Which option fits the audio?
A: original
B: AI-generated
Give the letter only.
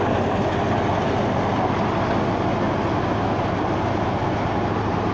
A